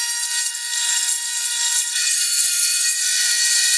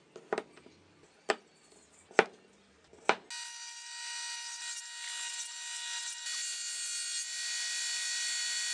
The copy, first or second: first